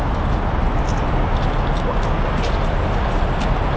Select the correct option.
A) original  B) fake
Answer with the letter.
A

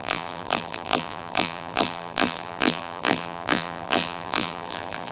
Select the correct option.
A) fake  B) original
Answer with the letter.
A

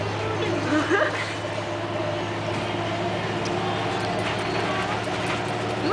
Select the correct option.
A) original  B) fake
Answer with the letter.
A